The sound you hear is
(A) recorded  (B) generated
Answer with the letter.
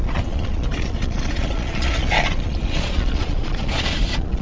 B